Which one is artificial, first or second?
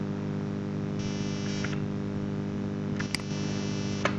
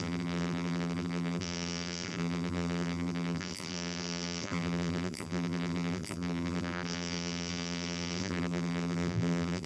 second